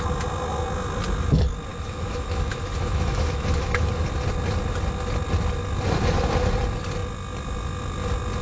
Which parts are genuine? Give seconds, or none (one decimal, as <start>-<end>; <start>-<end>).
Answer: 0.0-1.7; 3.9-8.4

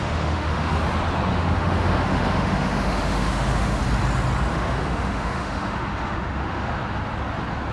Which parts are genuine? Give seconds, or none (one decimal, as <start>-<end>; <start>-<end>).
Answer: 0.8-1.3; 3.8-4.5; 6.7-7.7

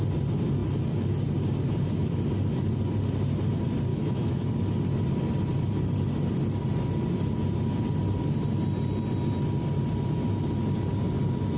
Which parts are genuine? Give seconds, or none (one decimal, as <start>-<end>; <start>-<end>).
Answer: 0.0-3.9; 4.5-11.6

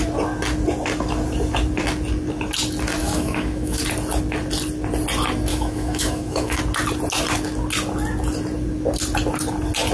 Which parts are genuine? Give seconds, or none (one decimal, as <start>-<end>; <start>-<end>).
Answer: 0.0-3.0; 3.8-5.5; 6.6-9.9

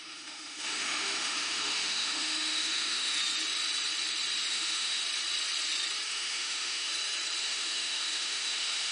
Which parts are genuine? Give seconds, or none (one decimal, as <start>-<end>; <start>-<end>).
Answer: 3.2-4.5; 5.0-6.1; 6.9-7.4

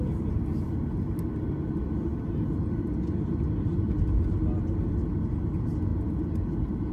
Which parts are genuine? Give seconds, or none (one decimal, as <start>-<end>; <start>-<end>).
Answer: 0.0-6.9